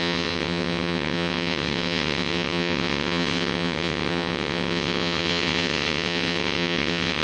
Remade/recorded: remade